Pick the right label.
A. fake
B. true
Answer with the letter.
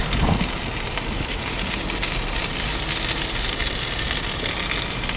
B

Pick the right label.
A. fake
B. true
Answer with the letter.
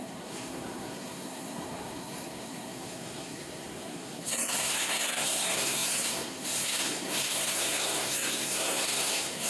A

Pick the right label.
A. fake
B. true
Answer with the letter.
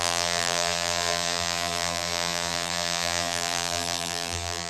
A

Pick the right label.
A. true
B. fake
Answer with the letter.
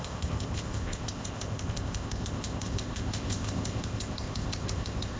B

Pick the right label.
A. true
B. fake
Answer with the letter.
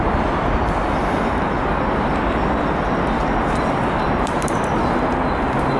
A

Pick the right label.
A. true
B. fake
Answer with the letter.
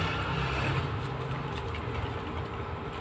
A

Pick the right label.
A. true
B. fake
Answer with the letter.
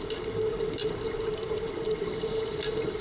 A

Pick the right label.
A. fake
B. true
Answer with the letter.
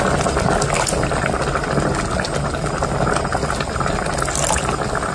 B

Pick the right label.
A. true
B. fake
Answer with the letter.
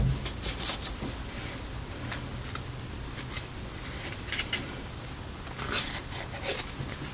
A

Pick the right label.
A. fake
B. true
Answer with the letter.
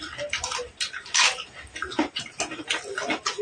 B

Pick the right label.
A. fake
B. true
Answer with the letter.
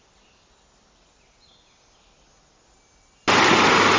B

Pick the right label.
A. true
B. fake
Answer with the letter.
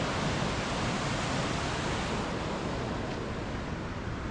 A